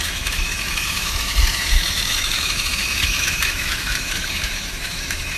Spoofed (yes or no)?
yes